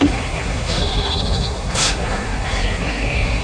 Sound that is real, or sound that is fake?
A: fake